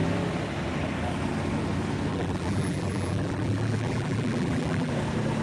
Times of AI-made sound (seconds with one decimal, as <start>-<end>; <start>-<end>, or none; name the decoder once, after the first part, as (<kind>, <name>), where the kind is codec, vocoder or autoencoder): 2.1-4.9 (vocoder, BigVGAN v2)